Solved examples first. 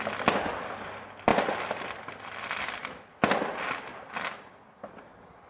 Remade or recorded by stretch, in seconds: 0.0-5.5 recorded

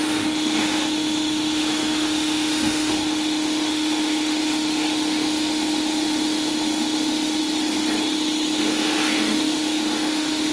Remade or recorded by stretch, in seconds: 0.0-7.4 remade; 7.4-8.6 recorded; 8.6-10.5 remade

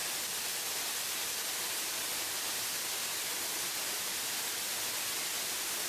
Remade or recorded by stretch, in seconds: 0.0-5.9 recorded

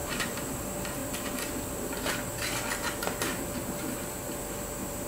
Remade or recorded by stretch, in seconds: 0.0-0.6 remade; 0.6-5.1 recorded

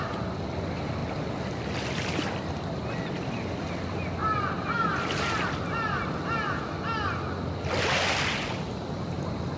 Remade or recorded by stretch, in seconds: 0.0-9.6 recorded

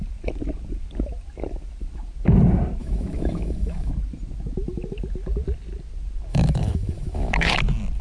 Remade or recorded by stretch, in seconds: 0.0-2.8 recorded; 2.8-3.9 remade; 3.9-6.3 recorded; 6.3-7.6 remade; 7.6-8.0 recorded